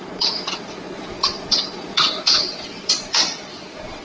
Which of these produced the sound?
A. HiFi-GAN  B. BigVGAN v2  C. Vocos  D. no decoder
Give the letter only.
C